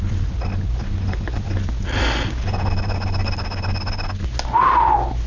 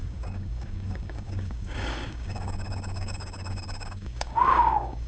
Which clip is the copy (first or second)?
second